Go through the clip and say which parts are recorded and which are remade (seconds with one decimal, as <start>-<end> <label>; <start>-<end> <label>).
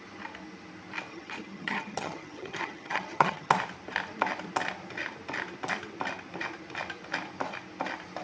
0.0-1.1 recorded; 1.1-3.5 remade; 3.5-8.2 recorded